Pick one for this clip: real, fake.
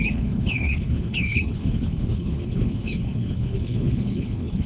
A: fake